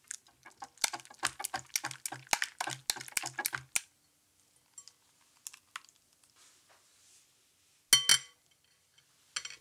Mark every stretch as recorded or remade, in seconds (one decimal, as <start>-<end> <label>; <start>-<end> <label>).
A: 0.0-9.6 recorded